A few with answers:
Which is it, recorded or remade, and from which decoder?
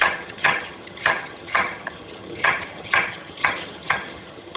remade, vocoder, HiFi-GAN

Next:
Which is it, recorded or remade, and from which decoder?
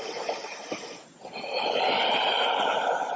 recorded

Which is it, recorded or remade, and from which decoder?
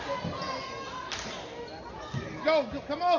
recorded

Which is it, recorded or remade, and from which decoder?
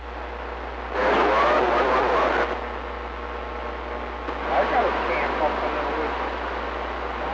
recorded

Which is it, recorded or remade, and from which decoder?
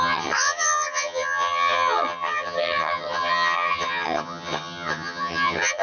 remade, vocoder, HiFi-GAN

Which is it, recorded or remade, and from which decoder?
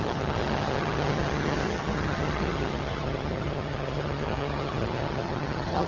remade, vocoder, HiFi-GAN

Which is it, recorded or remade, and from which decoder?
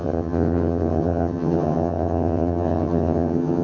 remade, vocoder, HiFi-GAN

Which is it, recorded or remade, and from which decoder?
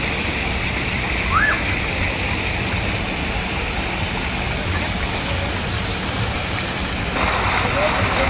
recorded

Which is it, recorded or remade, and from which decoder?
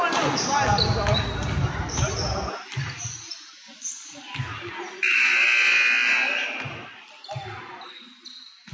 recorded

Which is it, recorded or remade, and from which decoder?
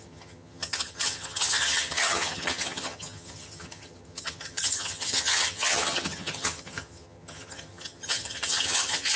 remade, vocoder, HiFi-GAN